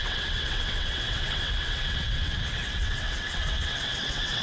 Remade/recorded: remade